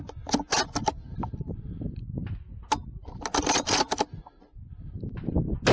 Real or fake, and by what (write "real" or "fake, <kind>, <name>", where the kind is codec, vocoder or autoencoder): real